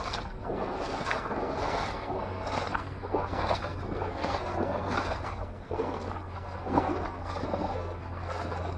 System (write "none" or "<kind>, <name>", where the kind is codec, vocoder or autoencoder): codec, SNAC